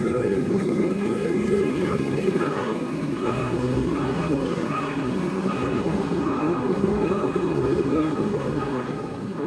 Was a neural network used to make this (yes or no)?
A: yes